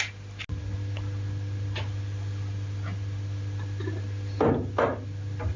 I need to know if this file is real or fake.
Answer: real